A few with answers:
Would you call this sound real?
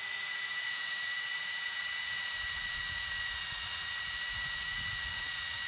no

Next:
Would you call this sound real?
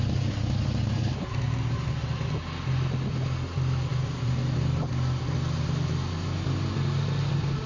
yes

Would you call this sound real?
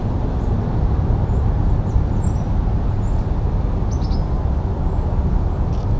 yes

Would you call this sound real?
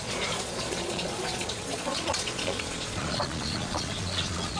no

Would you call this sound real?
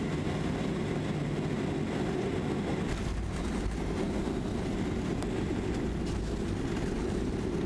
yes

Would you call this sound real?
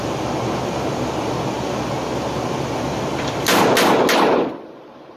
yes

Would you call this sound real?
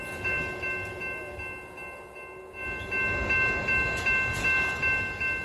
yes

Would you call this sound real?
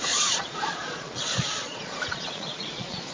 no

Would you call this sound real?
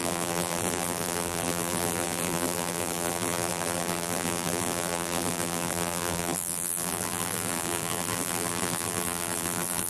no